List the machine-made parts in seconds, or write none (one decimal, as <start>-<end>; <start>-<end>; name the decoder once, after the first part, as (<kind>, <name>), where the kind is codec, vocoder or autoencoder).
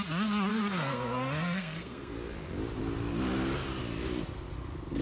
0.5-2.1 (codec, SNAC)